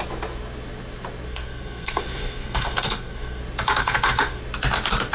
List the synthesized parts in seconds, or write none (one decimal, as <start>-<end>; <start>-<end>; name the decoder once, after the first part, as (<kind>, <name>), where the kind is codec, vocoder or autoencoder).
1.3-3.4 (codec, SNAC); 3.8-4.4